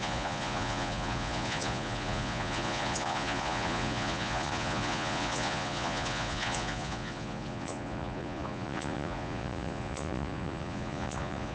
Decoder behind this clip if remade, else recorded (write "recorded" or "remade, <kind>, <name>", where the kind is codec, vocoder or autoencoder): remade, vocoder, Vocos